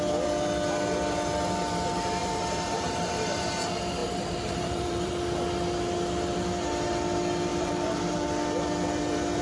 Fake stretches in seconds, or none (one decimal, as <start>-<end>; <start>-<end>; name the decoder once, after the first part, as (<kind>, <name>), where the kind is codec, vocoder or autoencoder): 2.2-3.5 (vocoder, BigVGAN v2); 4.0-5.1; 7.5-8.3